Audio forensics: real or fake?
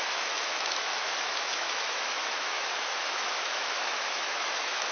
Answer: fake